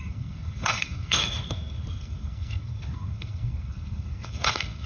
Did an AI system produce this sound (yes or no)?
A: yes